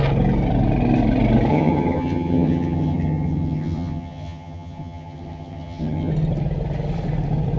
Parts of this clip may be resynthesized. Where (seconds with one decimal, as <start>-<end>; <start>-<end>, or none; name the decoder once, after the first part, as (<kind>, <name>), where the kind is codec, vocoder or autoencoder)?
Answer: 1.5-6.1 (vocoder, HiFi-GAN)